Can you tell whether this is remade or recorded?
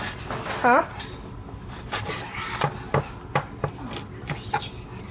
recorded